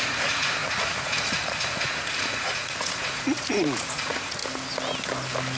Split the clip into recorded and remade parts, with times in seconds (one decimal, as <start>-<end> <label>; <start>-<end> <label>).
0.0-4.4 remade; 4.4-5.6 recorded